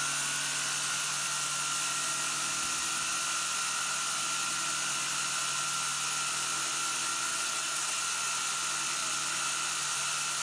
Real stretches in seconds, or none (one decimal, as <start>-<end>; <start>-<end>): 0.0-7.3; 8.0-10.4